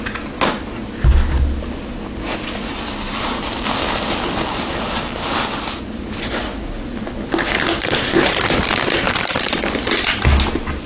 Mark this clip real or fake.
real